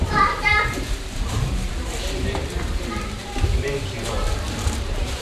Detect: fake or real fake